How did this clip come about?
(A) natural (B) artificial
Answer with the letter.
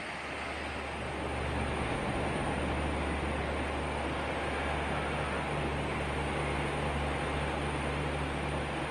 A